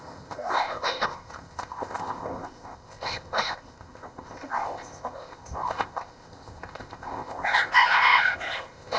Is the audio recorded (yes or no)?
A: no